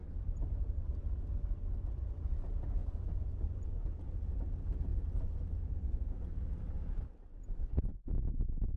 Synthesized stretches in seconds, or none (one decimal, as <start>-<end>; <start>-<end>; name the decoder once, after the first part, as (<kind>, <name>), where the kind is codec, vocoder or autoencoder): 0.0-1.0 (vocoder, BigVGAN v2); 2.8-4.0; 4.9-6.9